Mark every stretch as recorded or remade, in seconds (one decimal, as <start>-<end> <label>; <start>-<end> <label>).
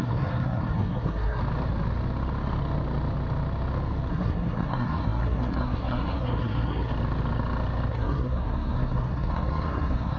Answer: 0.0-1.4 remade; 1.4-4.1 recorded; 4.1-6.9 remade; 6.9-7.9 recorded; 7.9-10.2 remade